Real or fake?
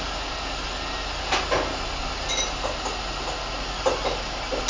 real